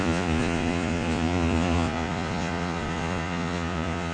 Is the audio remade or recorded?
remade